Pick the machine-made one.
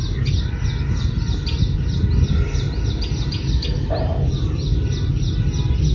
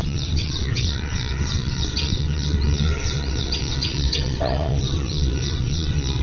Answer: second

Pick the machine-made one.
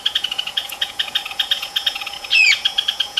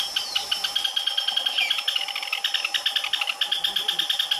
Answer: first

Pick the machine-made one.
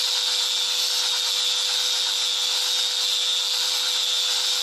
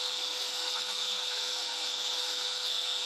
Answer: second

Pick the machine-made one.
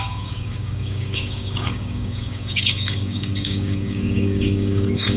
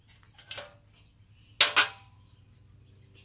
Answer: first